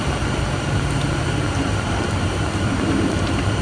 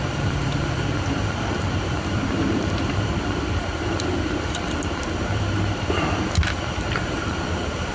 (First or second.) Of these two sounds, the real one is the first